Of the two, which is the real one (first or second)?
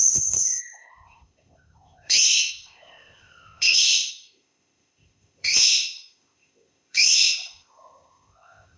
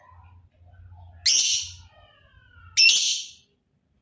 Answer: second